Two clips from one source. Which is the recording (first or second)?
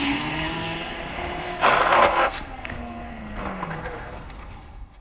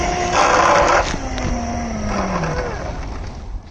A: second